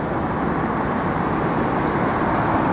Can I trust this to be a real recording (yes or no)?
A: yes